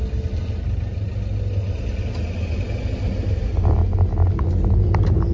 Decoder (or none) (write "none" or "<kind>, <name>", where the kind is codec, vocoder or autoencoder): none